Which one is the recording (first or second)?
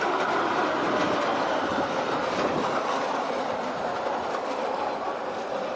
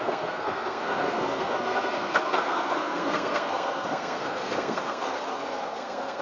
first